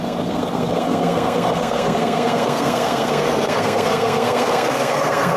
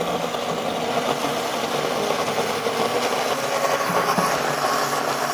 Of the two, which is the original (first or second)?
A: second